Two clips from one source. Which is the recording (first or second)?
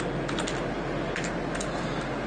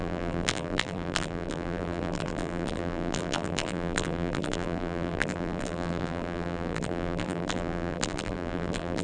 first